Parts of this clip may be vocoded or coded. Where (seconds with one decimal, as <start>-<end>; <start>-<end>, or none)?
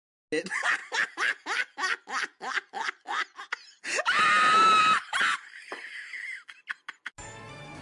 none